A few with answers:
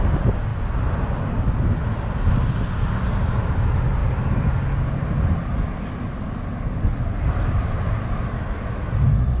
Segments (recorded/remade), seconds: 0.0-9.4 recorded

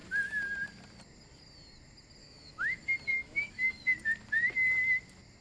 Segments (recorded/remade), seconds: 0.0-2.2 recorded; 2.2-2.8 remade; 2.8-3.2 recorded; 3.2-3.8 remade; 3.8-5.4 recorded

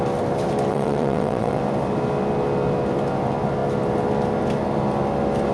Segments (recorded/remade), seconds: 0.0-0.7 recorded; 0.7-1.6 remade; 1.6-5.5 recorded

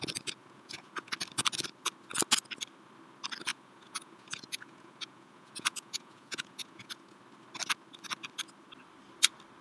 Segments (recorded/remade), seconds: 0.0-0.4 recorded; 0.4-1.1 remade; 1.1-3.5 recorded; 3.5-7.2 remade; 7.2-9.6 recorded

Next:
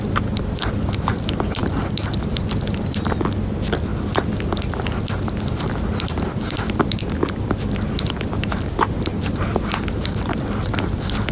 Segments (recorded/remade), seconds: 0.0-11.3 recorded

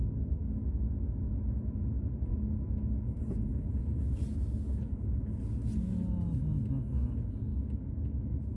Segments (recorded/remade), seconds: 0.0-2.3 recorded; 2.3-3.2 remade; 3.2-8.6 recorded

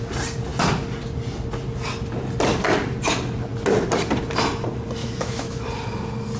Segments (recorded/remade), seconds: 0.0-5.0 recorded; 5.0-5.6 remade; 5.6-6.4 recorded

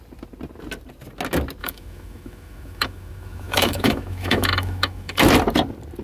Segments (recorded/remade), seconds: 0.0-1.6 recorded; 1.6-5.2 remade; 5.2-6.0 recorded